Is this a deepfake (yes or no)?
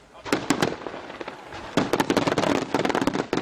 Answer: no